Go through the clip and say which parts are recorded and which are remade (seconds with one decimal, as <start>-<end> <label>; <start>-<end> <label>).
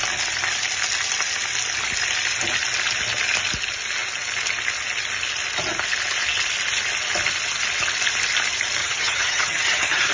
0.0-8.8 recorded; 8.8-10.1 remade